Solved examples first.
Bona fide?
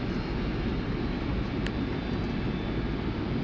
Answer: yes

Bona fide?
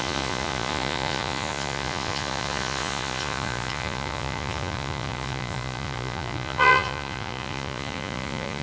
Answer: no